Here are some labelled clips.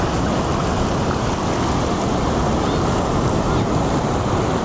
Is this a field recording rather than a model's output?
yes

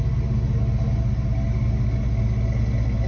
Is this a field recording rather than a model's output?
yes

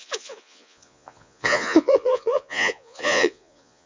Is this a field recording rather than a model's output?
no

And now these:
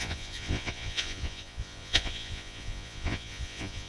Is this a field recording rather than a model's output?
no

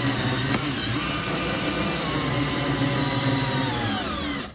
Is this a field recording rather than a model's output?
yes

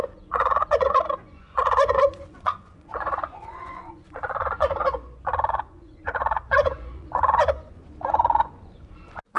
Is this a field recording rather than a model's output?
no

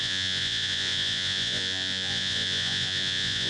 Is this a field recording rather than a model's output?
no